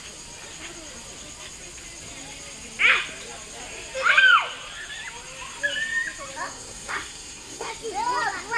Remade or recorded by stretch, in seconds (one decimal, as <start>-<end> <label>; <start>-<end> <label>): 0.0-6.5 recorded; 6.5-7.7 remade; 7.7-8.6 recorded